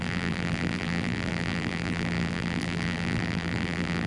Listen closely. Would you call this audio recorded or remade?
remade